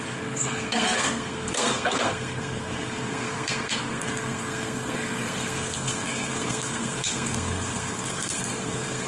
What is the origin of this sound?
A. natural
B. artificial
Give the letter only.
B